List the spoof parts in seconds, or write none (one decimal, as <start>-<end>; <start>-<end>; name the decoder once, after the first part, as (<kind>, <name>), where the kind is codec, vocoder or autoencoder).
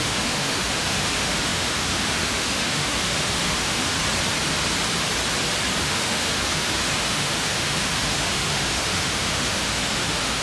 0.0-4.0 (autoencoder, DAC-VAE); 5.8-10.4